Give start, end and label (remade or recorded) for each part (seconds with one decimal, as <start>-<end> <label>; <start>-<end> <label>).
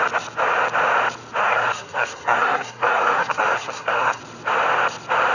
0.0-1.4 recorded; 1.4-4.2 remade; 4.2-5.3 recorded